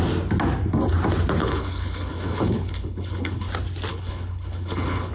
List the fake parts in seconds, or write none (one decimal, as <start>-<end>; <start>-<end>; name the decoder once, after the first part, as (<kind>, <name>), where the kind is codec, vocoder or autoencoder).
1.4-3.5 (codec, HILCodec); 3.9-5.1